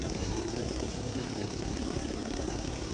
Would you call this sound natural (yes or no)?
no